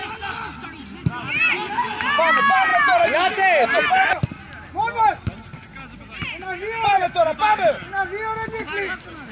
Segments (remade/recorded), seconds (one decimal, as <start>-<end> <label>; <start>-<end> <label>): 0.0-9.3 recorded